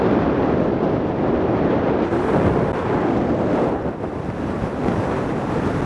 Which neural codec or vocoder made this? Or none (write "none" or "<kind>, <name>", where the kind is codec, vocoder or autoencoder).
none